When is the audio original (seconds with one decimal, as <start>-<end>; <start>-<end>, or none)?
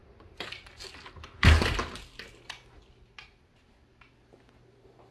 0.0-5.1